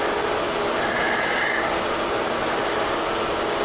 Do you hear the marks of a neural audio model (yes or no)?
no